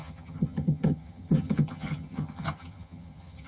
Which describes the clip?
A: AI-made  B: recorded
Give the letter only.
A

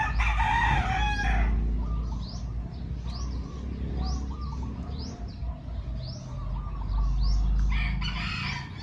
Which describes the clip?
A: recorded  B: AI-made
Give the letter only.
A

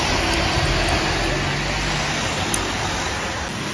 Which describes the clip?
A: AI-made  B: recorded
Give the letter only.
B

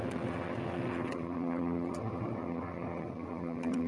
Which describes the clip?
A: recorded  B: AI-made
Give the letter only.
B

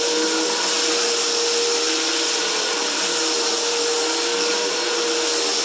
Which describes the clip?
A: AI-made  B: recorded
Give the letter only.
B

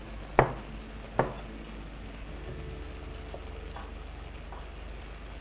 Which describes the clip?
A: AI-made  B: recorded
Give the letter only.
B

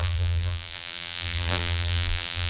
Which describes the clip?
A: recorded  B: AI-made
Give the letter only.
B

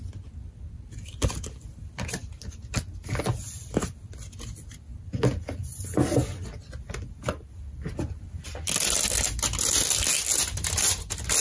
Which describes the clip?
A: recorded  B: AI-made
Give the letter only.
A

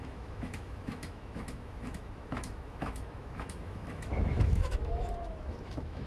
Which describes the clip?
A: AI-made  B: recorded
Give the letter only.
A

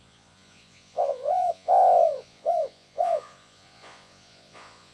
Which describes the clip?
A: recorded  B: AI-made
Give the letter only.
B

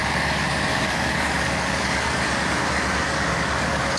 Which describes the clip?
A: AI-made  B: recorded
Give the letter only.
A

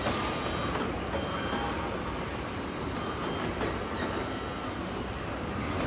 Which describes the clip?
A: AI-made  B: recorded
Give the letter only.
B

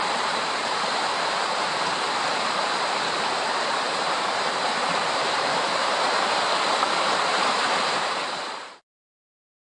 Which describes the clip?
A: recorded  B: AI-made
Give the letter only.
B